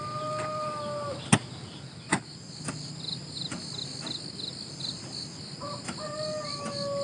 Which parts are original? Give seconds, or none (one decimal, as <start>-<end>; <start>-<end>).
0.0-7.0